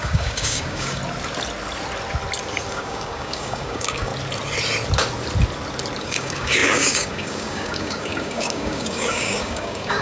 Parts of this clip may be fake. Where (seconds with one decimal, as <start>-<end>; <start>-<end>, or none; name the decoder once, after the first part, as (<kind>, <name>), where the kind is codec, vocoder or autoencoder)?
0.0-1.0 (codec, DAC); 2.7-4.1; 6.0-10.0